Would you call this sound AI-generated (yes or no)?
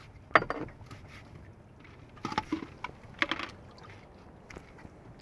no